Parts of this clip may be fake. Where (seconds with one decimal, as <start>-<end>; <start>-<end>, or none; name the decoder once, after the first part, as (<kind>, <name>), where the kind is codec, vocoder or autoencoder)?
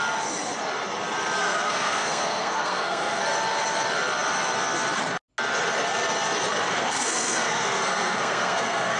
1.4-3.2 (codec, SNAC); 6.7-9.0